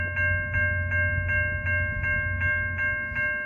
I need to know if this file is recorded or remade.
recorded